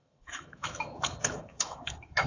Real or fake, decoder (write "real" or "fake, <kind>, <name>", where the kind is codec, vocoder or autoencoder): fake, autoencoder, DAC-VAE